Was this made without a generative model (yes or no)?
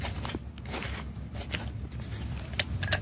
yes